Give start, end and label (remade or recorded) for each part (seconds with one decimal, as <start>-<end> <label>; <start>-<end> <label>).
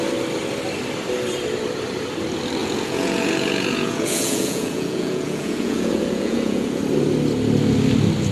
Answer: 0.0-2.6 recorded; 2.6-6.8 remade; 6.8-8.3 recorded